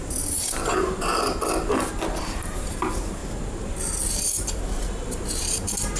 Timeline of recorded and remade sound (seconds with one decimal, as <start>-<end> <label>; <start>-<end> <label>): 0.0-1.1 remade; 1.1-2.2 recorded; 2.2-3.2 remade; 3.2-4.1 recorded; 4.1-6.0 remade